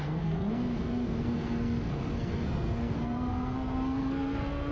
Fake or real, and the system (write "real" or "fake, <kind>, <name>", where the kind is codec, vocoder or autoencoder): fake, codec, SNAC